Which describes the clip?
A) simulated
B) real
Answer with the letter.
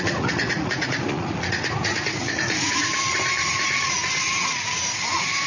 A